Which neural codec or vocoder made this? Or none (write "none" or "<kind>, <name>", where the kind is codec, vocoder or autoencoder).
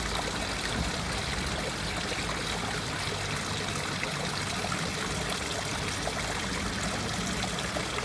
none